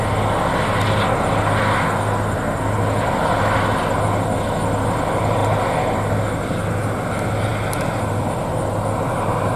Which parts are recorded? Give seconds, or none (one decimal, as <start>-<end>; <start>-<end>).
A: 0.0-9.6